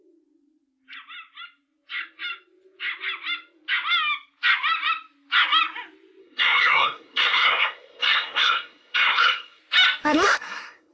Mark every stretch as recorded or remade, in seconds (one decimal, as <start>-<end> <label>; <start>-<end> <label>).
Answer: 0.0-6.2 recorded; 6.2-9.6 remade; 9.6-10.1 recorded; 10.1-10.9 remade